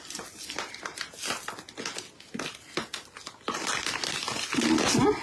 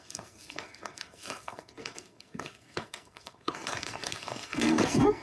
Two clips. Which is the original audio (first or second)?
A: first